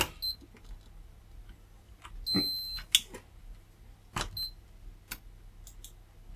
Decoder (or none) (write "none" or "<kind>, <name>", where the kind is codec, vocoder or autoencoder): none